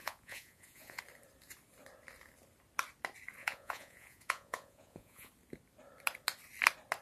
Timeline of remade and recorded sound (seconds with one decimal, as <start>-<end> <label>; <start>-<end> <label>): 0.0-1.0 remade; 1.0-3.4 recorded; 3.4-5.3 remade; 5.3-7.0 recorded